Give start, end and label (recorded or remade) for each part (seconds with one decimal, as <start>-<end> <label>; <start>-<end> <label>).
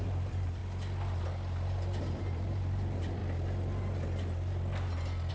0.0-0.6 remade; 0.6-2.0 recorded; 2.0-3.2 remade; 3.2-5.3 recorded